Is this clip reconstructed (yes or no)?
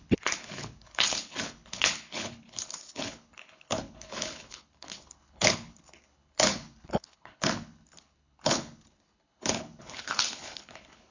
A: yes